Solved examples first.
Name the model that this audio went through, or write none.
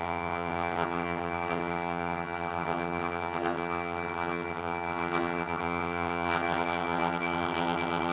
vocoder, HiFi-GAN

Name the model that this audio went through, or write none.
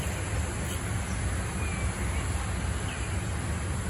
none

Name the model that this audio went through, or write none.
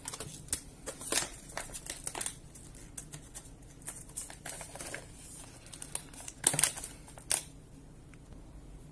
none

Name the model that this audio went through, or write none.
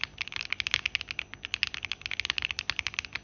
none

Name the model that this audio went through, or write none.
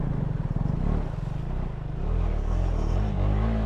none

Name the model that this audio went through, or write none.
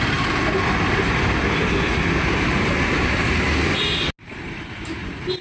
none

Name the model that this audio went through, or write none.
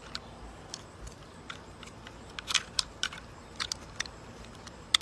none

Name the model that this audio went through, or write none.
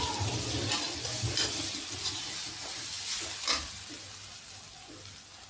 none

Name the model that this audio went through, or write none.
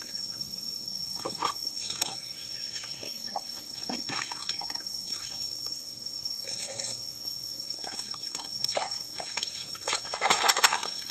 codec, SNAC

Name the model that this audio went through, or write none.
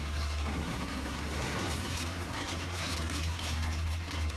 codec, SNAC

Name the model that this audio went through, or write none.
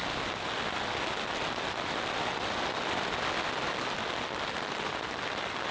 none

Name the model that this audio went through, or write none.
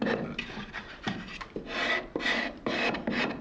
none